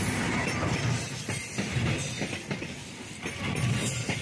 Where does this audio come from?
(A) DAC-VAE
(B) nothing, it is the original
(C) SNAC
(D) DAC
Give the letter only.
B